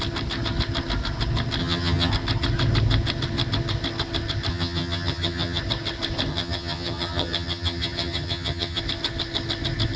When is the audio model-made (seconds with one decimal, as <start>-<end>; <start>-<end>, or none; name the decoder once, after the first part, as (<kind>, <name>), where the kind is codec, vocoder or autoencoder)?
1.6-2.1 (vocoder, HiFi-GAN); 4.5-5.6; 6.3-8.8